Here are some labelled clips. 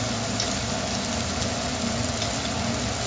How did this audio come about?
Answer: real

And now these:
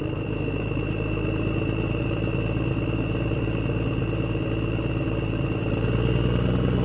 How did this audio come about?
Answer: fake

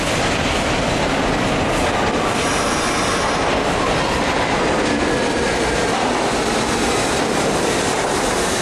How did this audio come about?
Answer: real